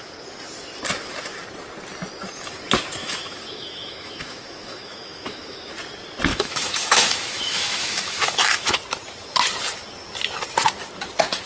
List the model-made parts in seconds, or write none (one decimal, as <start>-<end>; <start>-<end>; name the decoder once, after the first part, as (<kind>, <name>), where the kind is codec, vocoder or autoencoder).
3.0-5.7 (autoencoder, DAC-VAE); 6.3-8.8